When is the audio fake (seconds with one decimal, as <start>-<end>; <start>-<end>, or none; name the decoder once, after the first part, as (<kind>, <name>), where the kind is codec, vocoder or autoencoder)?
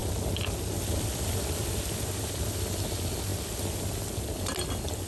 none